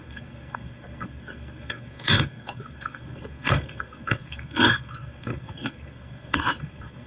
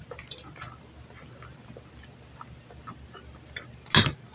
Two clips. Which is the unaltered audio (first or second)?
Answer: second